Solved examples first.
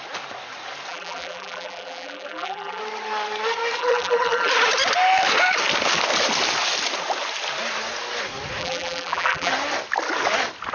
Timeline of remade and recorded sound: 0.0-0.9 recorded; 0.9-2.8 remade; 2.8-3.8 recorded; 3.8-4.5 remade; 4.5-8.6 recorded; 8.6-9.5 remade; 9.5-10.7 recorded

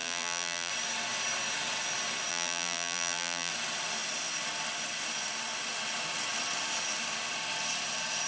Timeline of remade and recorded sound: 0.0-0.7 remade; 0.7-2.3 recorded; 2.3-3.5 remade; 3.5-8.3 recorded

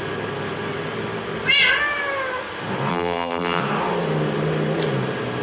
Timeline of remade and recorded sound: 0.0-2.9 recorded; 2.9-3.6 remade; 3.6-5.4 recorded

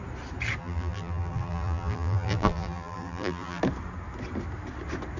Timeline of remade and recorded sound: 0.0-0.6 recorded; 0.6-3.6 remade; 3.6-5.2 recorded

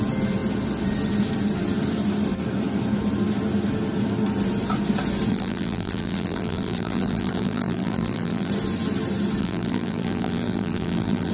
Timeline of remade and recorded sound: 0.0-5.3 recorded; 5.3-8.5 remade; 8.5-9.4 recorded; 9.4-11.3 remade